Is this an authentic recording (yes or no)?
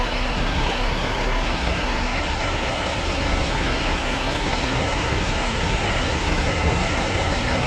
no